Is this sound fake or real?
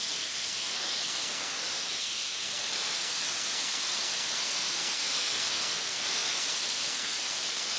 fake